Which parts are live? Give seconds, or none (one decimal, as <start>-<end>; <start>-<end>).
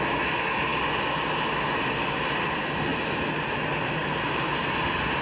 0.0-5.2